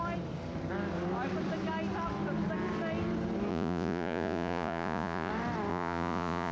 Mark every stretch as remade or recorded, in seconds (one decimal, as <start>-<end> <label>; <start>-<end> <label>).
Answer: 0.0-3.5 recorded; 3.5-5.3 remade; 5.3-5.7 recorded; 5.7-6.5 remade